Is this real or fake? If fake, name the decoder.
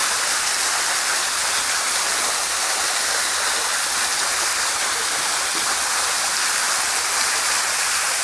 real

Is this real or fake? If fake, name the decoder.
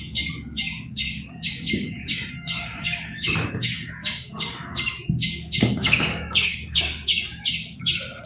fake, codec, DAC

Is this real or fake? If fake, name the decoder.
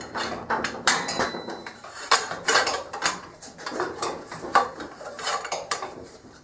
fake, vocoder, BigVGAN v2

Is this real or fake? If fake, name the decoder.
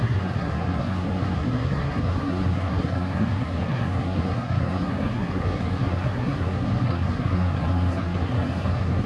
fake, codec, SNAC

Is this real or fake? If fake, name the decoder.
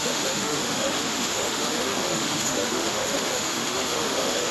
fake, autoencoder, DAC-VAE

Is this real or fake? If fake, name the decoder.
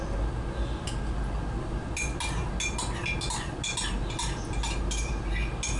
real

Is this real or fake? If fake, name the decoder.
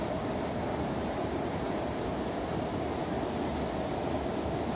real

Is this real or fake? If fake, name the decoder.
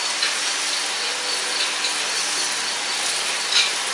real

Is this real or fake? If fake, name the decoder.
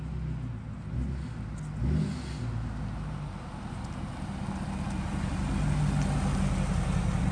real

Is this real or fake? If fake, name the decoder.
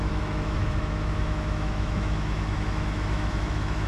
fake, autoencoder, DAC-VAE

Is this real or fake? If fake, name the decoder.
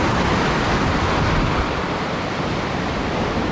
real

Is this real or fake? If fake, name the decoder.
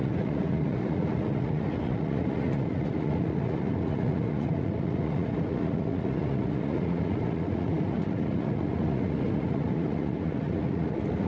fake, vocoder, Vocos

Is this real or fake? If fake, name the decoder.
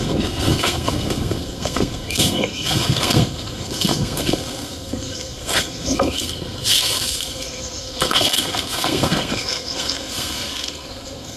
fake, codec, SNAC